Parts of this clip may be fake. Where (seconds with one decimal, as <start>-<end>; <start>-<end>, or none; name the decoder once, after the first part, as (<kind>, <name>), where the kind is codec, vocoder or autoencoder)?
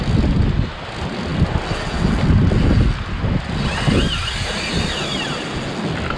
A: none